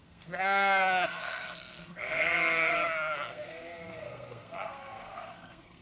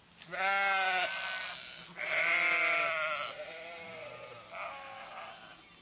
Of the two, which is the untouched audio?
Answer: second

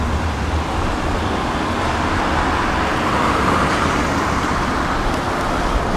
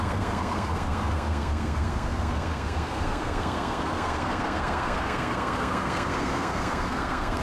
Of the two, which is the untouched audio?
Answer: first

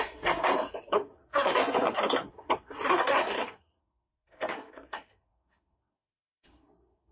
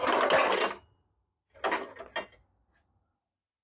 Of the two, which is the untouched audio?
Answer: second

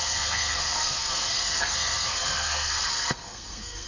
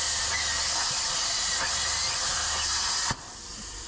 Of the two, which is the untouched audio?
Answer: second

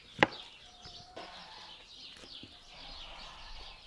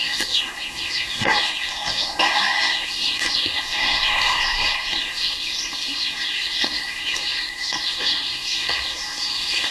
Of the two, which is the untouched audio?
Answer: first